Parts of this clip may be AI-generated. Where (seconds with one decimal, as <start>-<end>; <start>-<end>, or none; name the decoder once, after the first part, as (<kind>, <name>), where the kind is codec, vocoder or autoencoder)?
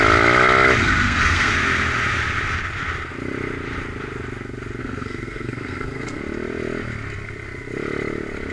0.8-1.5 (codec, SNAC); 4.8-6.2